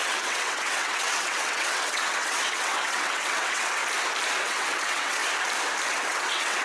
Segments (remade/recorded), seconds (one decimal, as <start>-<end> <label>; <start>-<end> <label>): 0.0-3.8 remade; 3.8-4.4 recorded; 4.4-5.2 remade; 5.2-5.9 recorded; 5.9-6.6 remade